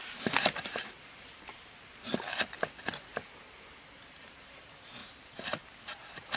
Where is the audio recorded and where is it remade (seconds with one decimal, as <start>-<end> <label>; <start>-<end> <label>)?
0.0-2.1 remade; 2.1-3.1 recorded; 3.1-4.5 remade; 4.5-5.0 recorded; 5.0-5.6 remade; 5.6-6.4 recorded